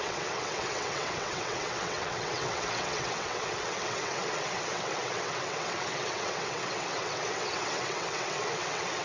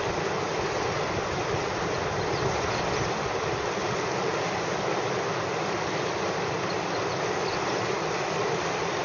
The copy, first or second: first